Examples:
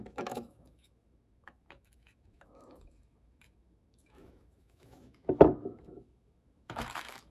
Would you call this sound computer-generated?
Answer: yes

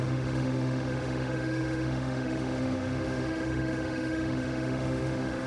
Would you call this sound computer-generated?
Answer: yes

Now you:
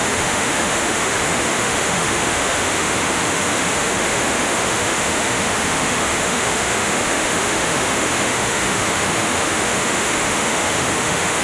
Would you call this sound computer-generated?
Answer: yes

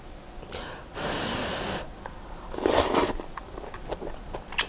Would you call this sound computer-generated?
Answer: no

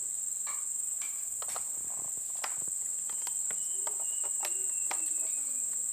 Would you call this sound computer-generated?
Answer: no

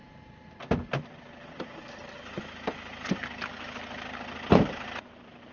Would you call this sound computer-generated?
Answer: no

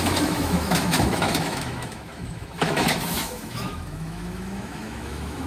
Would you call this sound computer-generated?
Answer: yes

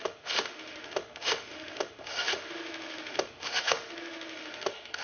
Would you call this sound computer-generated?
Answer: yes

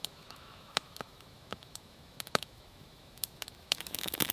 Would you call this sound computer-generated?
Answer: yes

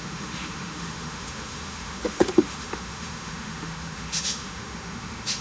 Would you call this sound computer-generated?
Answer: yes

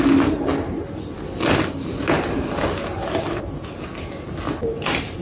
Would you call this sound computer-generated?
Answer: no